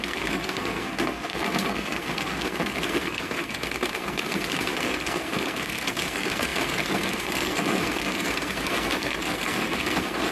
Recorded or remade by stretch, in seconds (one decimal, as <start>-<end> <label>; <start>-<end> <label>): 0.0-10.3 remade